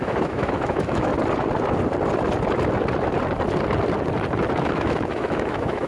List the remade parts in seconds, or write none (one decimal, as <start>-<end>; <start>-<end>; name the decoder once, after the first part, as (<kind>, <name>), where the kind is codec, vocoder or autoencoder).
0.0-1.1 (autoencoder, DAC-VAE); 4.6-5.9